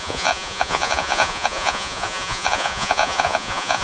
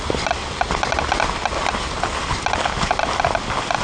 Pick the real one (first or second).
second